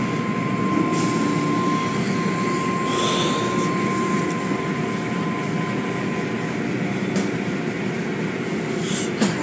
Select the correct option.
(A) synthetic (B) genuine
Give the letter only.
B